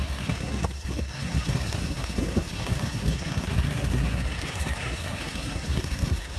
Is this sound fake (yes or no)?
yes